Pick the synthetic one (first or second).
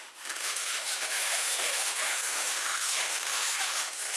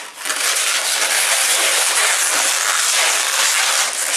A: first